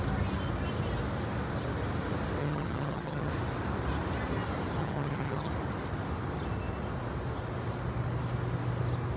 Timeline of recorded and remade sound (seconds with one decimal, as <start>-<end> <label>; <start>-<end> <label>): 0.0-2.4 recorded; 2.4-3.3 remade; 3.3-4.8 recorded; 4.8-5.5 remade; 5.5-9.2 recorded

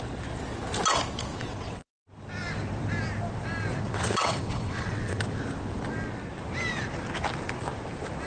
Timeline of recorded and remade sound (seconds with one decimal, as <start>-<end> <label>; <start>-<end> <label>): 0.0-1.3 recorded; 1.3-1.9 remade; 1.9-3.7 recorded; 3.7-5.2 remade; 5.2-8.3 recorded

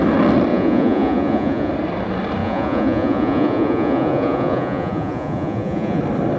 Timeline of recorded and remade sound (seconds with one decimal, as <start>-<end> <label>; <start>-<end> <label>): 0.0-0.5 recorded; 0.5-1.7 remade; 1.7-2.4 recorded; 2.4-6.0 remade; 6.0-6.4 recorded

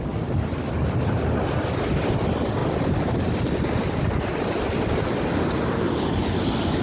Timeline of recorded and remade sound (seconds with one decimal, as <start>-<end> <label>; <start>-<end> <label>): 0.0-6.8 recorded

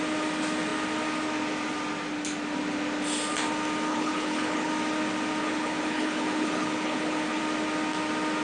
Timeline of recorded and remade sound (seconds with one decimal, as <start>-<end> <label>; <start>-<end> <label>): 0.0-3.9 recorded; 3.9-4.7 remade; 4.7-5.4 recorded; 5.4-7.4 remade; 7.4-8.4 recorded